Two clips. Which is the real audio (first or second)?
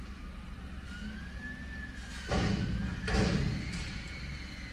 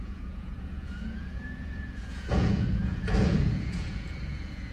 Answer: first